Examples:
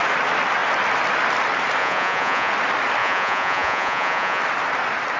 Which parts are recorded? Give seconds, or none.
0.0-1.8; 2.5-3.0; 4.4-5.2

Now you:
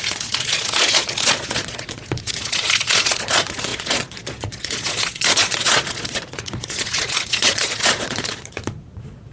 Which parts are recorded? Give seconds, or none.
none

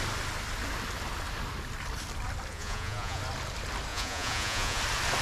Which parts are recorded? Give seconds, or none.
0.0-2.5; 3.2-3.9; 4.8-5.2

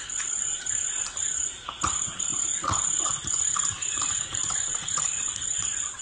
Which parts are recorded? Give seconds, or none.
none

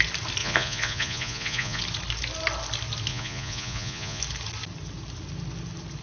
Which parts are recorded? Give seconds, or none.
0.0-0.4; 1.8-3.1; 4.2-6.0

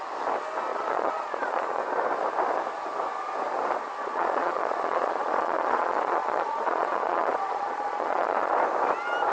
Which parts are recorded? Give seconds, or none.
0.0-0.7; 1.8-4.0; 8.5-9.3